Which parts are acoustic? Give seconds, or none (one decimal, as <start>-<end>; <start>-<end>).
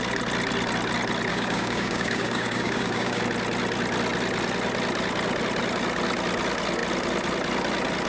0.0-1.3; 3.2-8.1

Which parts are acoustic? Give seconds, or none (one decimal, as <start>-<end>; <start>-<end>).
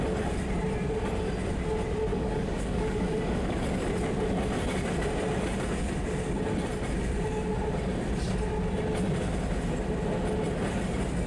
0.0-2.1; 3.6-11.3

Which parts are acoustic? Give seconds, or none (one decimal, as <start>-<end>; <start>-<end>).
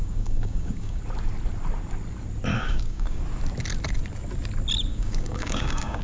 1.0-2.5; 3.2-4.9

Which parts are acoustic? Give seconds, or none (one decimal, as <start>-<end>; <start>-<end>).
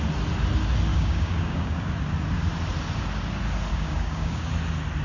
0.0-0.9; 1.9-3.7; 4.5-5.0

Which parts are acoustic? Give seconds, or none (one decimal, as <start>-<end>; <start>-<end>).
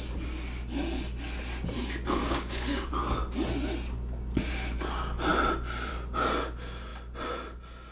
0.0-2.2; 2.9-7.9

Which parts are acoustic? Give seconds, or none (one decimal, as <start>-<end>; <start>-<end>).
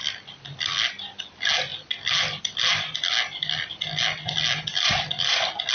0.0-5.7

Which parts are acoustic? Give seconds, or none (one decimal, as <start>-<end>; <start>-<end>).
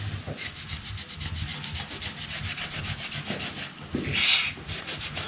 0.0-5.3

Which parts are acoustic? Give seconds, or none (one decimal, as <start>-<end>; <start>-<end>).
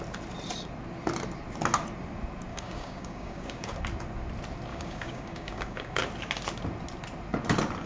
0.0-2.5; 3.7-4.7; 6.0-7.9